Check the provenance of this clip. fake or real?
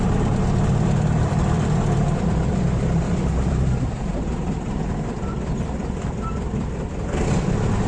fake